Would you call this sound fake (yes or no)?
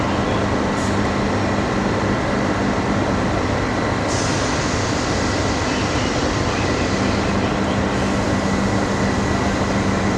no